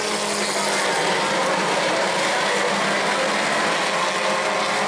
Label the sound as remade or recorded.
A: recorded